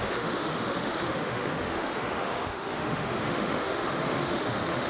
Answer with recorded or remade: remade